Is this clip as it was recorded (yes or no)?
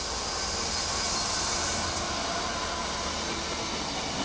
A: yes